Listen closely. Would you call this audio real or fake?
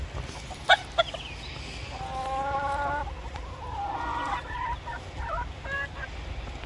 real